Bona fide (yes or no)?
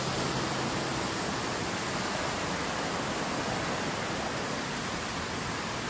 yes